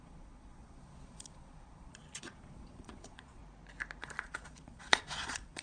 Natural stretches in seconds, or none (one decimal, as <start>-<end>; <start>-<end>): 3.4-4.0